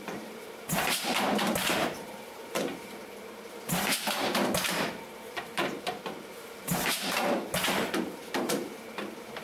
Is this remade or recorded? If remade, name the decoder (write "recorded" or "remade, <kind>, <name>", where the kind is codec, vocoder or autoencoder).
remade, vocoder, BigVGAN v2